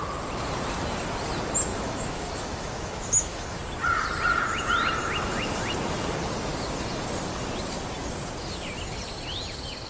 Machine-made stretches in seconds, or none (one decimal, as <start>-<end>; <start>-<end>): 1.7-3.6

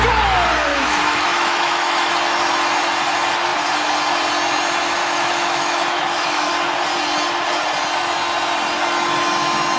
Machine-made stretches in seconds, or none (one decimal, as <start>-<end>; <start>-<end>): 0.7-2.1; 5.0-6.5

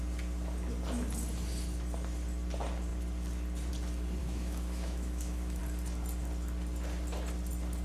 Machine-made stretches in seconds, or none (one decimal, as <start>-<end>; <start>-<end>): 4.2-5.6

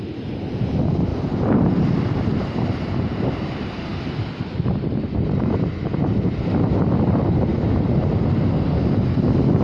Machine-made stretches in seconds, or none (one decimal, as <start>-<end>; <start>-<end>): none

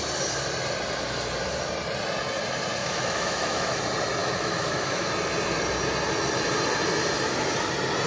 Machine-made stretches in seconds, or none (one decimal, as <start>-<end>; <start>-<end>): 2.8-3.8; 4.2-5.1

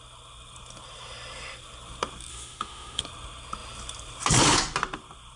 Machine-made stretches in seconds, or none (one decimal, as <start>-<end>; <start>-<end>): 2.3-3.0

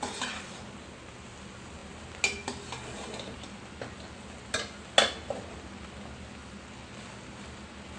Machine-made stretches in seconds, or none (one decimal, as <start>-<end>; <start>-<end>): none

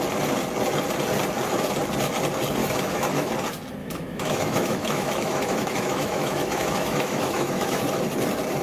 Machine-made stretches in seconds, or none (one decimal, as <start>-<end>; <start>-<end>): 2.6-3.3; 3.8-7.8